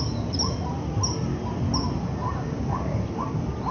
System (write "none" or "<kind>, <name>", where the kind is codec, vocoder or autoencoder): none